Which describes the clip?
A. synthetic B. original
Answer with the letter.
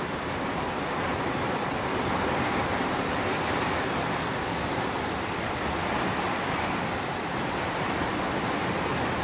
B